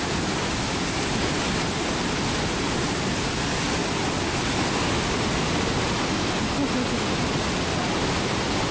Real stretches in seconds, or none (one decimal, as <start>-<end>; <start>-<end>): 0.0-8.7